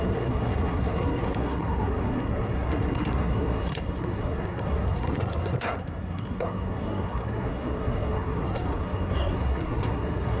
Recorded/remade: remade